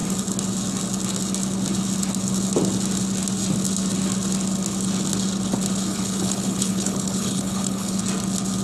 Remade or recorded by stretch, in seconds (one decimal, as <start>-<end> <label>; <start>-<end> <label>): 0.0-5.9 recorded; 5.9-8.0 remade; 8.0-8.6 recorded